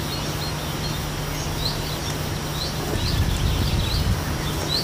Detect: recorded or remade recorded